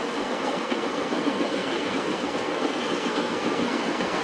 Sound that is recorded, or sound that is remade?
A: remade